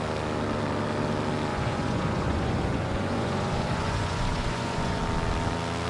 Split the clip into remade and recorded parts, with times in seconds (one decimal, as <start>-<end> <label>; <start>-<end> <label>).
0.0-1.5 recorded; 1.5-5.0 remade; 5.0-5.9 recorded